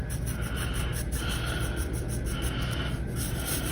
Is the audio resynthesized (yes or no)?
no